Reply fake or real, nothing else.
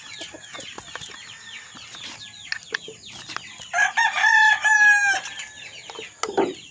real